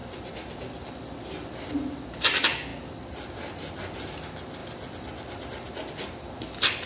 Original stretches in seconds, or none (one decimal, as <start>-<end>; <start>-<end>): 0.0-6.9